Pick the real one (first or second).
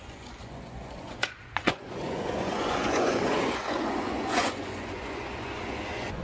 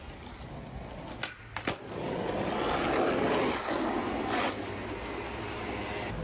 second